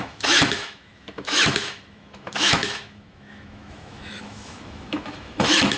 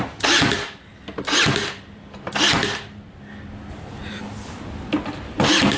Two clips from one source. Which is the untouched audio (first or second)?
second